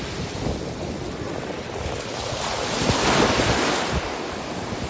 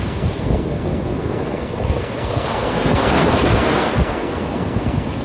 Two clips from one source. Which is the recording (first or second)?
first